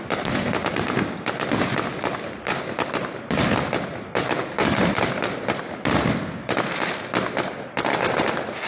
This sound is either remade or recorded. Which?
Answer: recorded